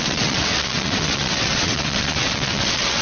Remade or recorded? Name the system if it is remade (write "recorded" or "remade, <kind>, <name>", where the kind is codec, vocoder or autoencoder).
remade, vocoder, WaveNeXt